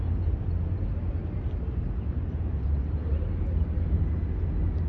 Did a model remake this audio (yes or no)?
no